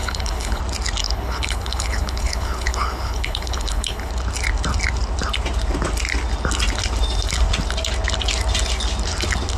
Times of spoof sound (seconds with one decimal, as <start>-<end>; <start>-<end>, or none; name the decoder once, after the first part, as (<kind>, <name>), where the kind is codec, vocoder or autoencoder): 0.0-0.6 (codec, HILCodec); 1.0-4.1